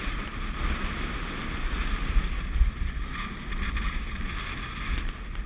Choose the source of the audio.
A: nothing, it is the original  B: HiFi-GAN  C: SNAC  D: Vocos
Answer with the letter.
A